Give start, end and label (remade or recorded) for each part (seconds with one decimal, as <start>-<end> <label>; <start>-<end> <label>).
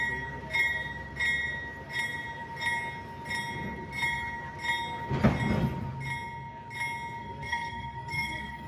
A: 0.0-7.2 recorded; 7.2-8.7 remade